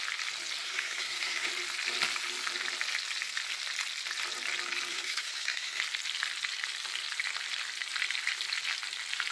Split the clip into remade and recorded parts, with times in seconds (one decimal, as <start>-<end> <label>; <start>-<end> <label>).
0.0-0.6 recorded; 0.6-1.5 remade; 1.5-4.9 recorded; 4.9-5.8 remade; 5.8-9.3 recorded